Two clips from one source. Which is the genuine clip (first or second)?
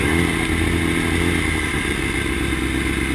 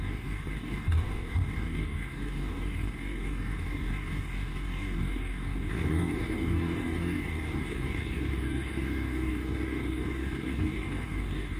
first